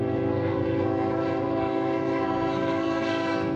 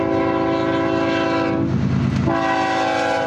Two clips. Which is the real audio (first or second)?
second